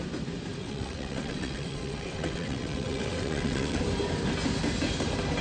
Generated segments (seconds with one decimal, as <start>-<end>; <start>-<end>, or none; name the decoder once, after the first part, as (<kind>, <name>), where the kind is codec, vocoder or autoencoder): 0.6-3.8 (vocoder, WaveNeXt)